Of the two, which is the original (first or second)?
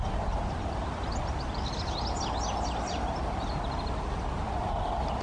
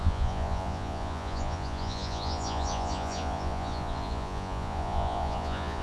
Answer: first